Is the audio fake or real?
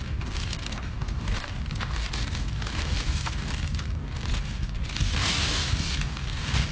fake